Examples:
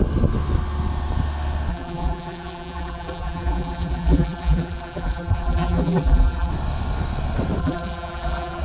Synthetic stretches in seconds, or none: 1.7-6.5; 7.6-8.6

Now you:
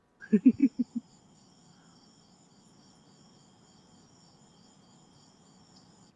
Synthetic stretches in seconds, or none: none

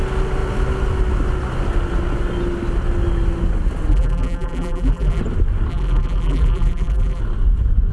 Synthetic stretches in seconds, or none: 3.9-5.2; 5.7-7.2

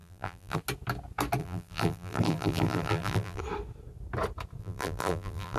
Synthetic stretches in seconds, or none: 0.0-0.6; 1.4-3.4; 4.6-5.6